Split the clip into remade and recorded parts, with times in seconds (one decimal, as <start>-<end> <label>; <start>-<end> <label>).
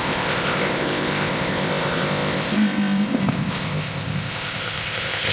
0.0-5.3 remade